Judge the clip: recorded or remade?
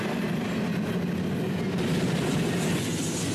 recorded